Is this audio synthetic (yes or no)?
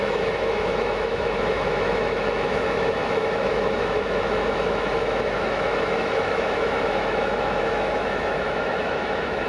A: yes